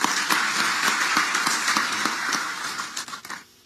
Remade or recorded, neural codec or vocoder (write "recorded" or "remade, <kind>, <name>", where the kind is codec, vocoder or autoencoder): recorded